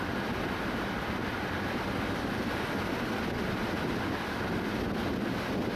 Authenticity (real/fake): real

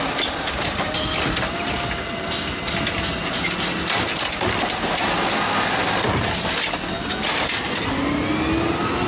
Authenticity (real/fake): real